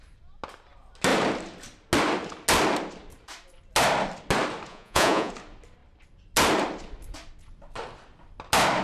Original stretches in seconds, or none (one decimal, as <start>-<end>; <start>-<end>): 0.0-4.7; 5.3-8.8